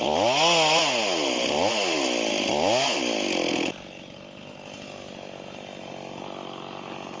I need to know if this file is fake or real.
real